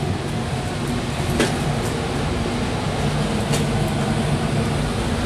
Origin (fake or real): real